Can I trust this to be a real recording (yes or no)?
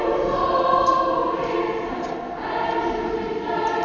yes